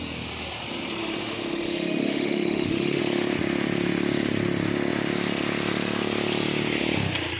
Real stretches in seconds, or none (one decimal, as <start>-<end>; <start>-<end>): 0.0-1.0; 3.0-7.4